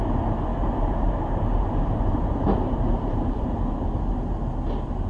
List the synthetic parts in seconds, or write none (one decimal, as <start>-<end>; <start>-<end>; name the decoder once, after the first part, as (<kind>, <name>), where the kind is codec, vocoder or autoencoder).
0.5-3.6 (vocoder, BigVGAN v2)